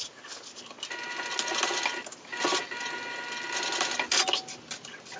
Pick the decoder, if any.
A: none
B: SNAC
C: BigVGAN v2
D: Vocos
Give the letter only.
A